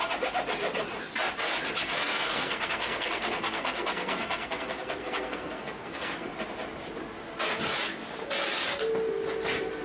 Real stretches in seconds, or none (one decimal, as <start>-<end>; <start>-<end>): 0.0-1.8; 6.3-9.8